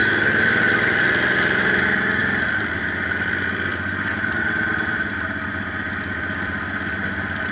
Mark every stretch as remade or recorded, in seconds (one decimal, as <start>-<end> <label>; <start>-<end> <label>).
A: 0.0-7.5 recorded